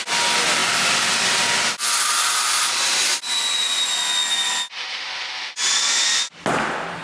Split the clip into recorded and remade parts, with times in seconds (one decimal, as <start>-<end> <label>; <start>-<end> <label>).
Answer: 0.0-7.0 recorded

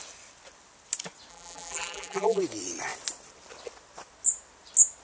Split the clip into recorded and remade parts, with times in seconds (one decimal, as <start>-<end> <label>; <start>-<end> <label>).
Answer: 0.0-1.3 recorded; 1.3-2.4 remade; 2.4-5.0 recorded

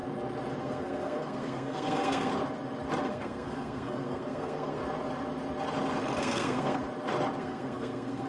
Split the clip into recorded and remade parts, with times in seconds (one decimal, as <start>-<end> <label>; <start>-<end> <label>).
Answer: 0.0-0.6 recorded; 0.6-2.3 remade; 2.3-3.0 recorded; 3.0-4.8 remade; 4.8-6.2 recorded; 6.2-6.8 remade; 6.8-7.4 recorded; 7.4-8.3 remade

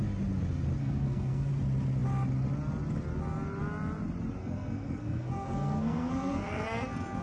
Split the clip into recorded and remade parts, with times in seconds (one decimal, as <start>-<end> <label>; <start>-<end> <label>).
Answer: 0.0-0.8 recorded; 0.8-1.5 remade; 1.5-4.4 recorded; 4.4-7.2 remade

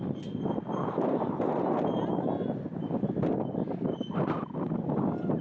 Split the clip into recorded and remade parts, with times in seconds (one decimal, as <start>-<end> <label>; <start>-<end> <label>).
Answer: 0.0-0.8 recorded; 0.8-1.6 remade; 1.6-5.4 recorded

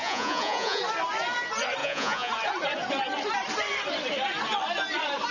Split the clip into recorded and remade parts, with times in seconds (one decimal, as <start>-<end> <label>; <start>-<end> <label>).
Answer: 0.0-0.8 remade; 0.8-1.8 recorded; 1.8-2.3 remade; 2.3-5.3 recorded

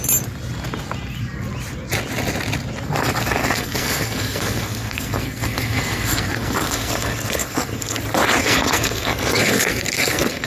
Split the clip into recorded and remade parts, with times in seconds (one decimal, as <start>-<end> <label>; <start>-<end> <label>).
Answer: 0.0-3.4 recorded; 3.4-8.0 remade; 8.0-8.4 recorded; 8.4-10.5 remade

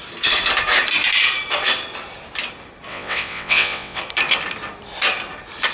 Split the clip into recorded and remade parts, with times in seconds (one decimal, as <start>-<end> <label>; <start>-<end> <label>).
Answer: 0.0-2.9 recorded; 2.9-4.0 remade; 4.0-5.7 recorded